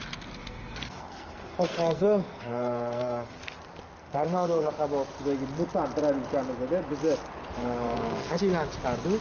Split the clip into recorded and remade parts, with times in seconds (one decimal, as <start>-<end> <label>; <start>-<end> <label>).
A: 0.0-0.4 recorded; 0.4-3.4 remade; 3.4-4.0 recorded; 4.0-4.7 remade; 4.7-7.6 recorded; 7.6-8.4 remade; 8.4-9.2 recorded